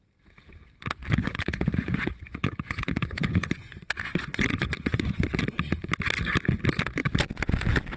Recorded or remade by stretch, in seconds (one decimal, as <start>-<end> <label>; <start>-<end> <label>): 0.0-1.2 recorded; 1.2-5.4 remade; 5.4-8.0 recorded